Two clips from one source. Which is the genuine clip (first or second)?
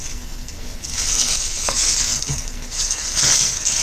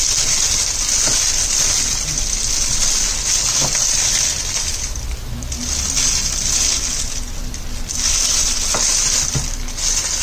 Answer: second